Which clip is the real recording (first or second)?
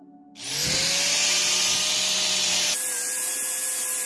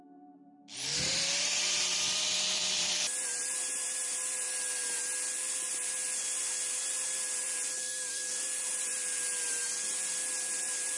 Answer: first